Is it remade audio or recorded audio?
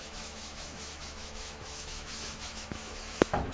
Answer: remade